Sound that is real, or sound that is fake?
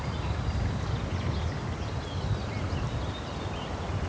real